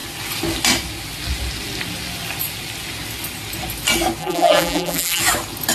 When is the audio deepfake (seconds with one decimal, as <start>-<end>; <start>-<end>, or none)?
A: 4.2-5.2